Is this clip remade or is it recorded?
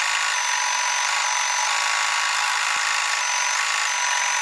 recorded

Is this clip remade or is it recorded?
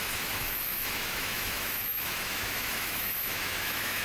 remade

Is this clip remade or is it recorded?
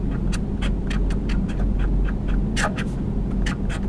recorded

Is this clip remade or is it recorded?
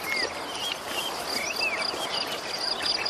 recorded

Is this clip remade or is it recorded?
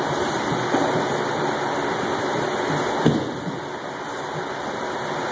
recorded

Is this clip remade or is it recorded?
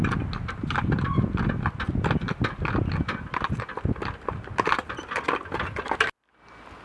recorded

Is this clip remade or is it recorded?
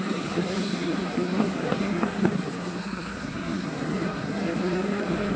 remade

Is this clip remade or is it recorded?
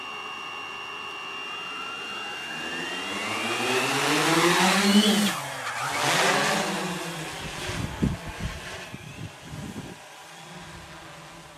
recorded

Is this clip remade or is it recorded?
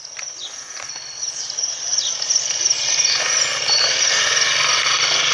recorded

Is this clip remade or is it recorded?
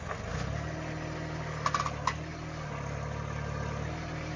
recorded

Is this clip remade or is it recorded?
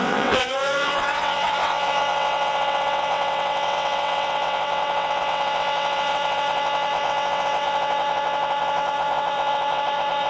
remade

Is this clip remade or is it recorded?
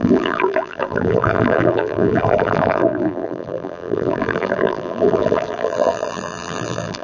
remade